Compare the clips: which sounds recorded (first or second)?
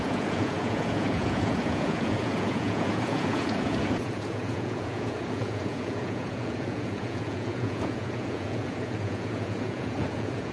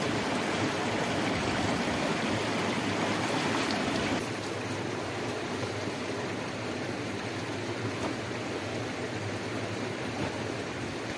second